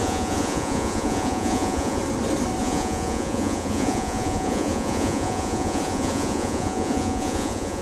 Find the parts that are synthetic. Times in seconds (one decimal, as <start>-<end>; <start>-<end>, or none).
0.0-2.0; 2.6-7.8